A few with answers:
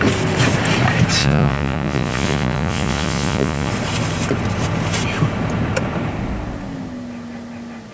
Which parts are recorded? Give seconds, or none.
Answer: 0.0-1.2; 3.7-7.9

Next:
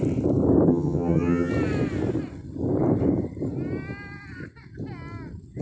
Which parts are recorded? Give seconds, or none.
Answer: 0.0-0.7; 1.5-5.6

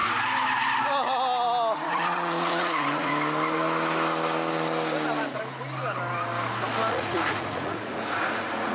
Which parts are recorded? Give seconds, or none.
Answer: 0.0-1.9; 3.1-6.9

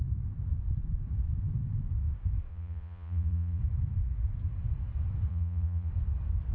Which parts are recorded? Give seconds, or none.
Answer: 0.0-2.5; 3.6-5.3; 5.9-6.5

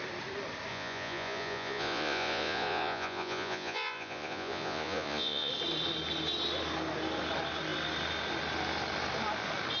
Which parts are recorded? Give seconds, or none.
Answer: 0.0-0.7; 5.5-9.8

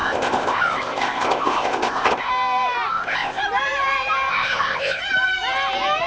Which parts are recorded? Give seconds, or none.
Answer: 2.3-2.9; 3.4-4.3; 5.0-6.1